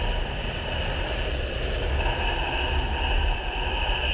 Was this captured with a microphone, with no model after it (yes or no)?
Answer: yes